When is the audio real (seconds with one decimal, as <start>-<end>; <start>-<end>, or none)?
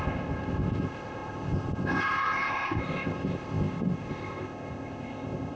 none